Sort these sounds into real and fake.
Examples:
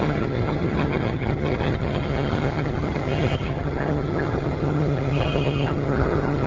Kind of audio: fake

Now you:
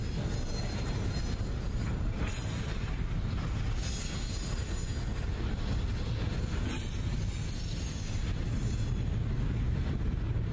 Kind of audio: real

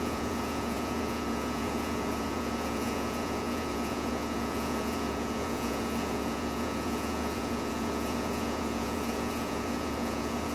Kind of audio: fake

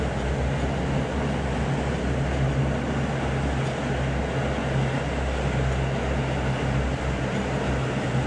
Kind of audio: real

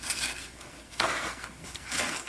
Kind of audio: fake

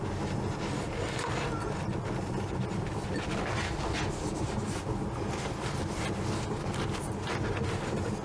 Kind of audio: real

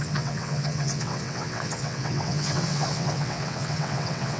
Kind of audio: fake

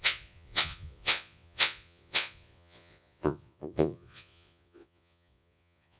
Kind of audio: fake